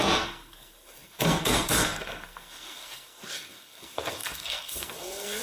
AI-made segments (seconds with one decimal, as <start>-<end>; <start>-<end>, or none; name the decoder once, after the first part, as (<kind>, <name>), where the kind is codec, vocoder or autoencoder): 0.0-5.4 (codec, SNAC)